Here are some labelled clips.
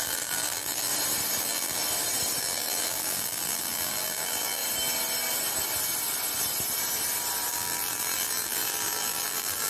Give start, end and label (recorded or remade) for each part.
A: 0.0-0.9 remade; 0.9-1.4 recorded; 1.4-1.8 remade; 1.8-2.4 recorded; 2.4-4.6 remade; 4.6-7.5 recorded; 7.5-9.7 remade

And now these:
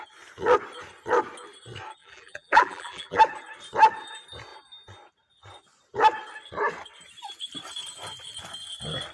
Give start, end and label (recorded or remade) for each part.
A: 0.0-2.0 recorded; 2.0-3.2 remade; 3.2-9.1 recorded